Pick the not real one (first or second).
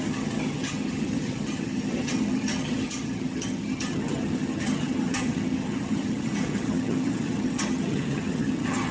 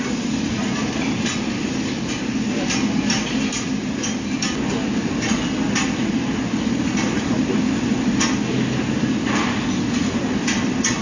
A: first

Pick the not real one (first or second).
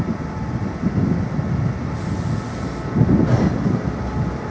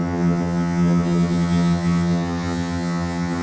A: second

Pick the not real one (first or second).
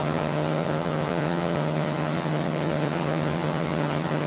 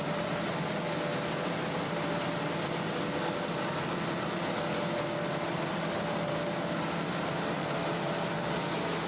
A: first